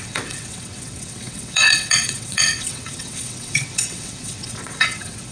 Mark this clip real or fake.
fake